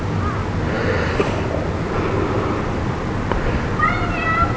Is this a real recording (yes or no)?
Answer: yes